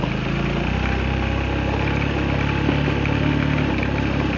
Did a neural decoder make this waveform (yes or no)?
no